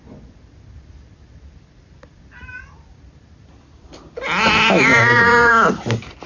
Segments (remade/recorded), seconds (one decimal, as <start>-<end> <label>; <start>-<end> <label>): 0.0-4.9 recorded; 4.9-5.5 remade; 5.5-6.3 recorded